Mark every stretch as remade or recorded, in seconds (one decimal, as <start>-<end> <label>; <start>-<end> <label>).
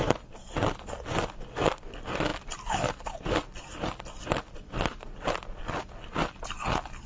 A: 0.0-7.1 recorded